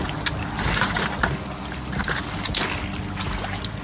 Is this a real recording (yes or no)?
yes